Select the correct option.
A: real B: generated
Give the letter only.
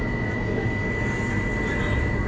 A